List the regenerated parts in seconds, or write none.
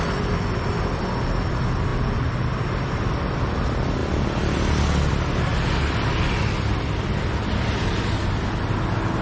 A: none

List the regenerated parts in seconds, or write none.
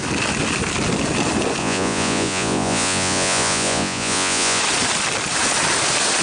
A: 1.6-4.6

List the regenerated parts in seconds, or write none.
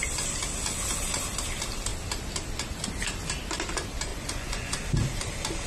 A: 4.1-4.7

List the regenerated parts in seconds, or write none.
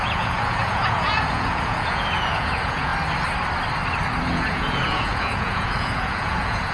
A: 0.0-2.9; 4.3-6.7